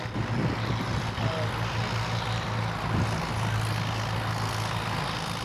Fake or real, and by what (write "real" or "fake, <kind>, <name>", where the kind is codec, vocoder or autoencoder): real